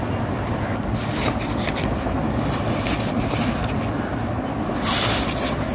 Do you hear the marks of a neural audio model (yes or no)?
no